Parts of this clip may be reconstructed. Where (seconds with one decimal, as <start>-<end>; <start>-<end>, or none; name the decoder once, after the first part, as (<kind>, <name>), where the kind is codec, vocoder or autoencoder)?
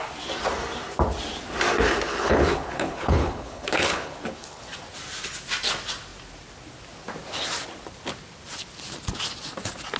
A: 2.1-4.6 (codec, HILCodec)